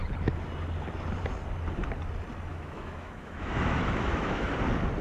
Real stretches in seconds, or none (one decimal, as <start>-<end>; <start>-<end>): 0.0-2.5; 4.5-5.0